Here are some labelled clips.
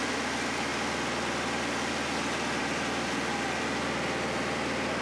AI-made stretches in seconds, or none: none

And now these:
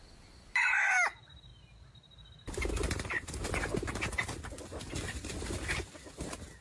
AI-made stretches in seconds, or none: none

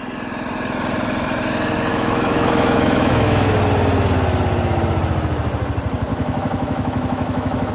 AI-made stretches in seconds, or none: 1.9-3.5 (autoencoder, DAC-VAE); 6.1-7.7

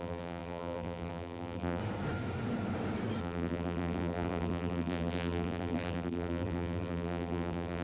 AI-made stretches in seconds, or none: 0.0-1.8 (vocoder, BigVGAN v2); 3.2-7.8

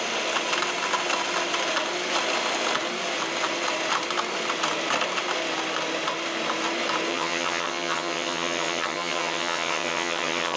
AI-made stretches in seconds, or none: 7.1-10.6 (vocoder, HiFi-GAN)